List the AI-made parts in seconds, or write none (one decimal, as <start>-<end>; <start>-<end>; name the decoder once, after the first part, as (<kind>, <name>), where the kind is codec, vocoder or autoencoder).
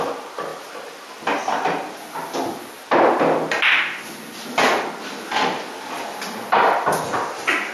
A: none